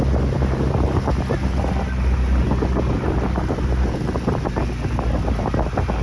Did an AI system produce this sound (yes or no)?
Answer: no